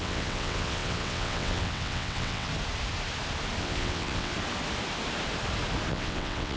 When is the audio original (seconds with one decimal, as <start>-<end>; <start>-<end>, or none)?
2.5-3.6; 4.3-5.9